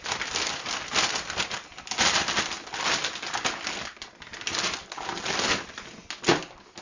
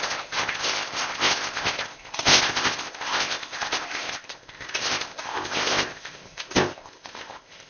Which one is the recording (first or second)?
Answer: first